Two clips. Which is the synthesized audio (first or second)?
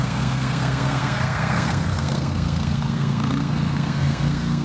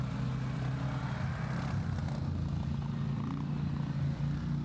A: first